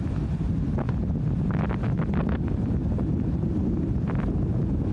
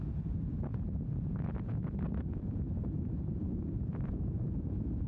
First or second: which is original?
first